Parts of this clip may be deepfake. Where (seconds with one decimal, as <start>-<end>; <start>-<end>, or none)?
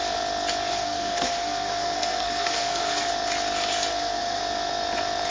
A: 0.7-3.1; 3.9-4.4